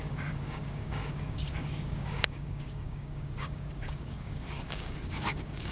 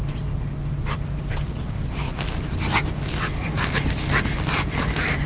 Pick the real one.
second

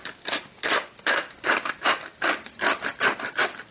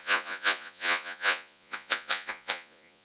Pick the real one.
first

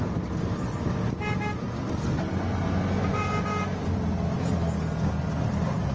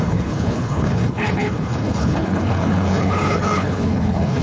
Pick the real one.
first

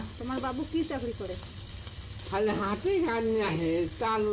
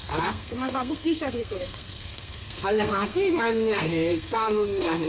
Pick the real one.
first